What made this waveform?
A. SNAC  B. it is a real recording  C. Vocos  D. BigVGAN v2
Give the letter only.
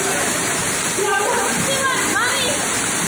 B